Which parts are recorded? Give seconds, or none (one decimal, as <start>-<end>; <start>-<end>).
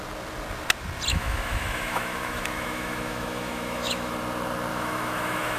0.0-1.1; 4.1-4.7